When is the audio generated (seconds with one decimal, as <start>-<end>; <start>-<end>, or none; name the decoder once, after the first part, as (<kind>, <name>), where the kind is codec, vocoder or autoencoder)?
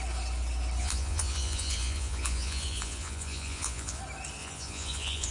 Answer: 0.8-4.0 (vocoder, Vocos); 4.4-5.3